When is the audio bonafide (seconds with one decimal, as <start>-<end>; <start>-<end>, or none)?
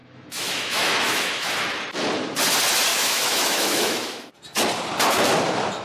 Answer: 1.5-2.9; 4.3-5.8